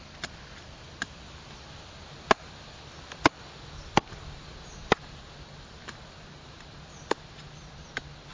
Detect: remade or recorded recorded